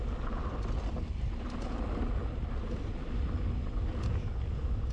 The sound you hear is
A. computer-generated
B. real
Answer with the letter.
B